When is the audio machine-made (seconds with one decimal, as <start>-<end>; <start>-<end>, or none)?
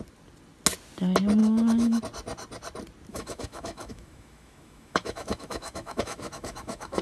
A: 1.4-2.0; 3.1-7.0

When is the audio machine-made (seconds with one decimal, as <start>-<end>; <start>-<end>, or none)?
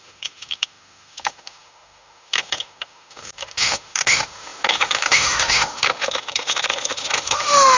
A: 0.0-7.8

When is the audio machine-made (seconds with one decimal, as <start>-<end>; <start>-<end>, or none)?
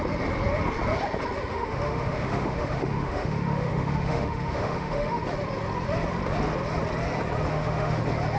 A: 1.5-5.2; 7.5-8.0